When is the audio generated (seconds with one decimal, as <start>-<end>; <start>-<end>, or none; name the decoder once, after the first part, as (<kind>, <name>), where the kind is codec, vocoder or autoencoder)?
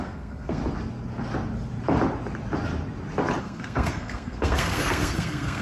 0.0-0.6 (codec, SNAC); 3.4-5.6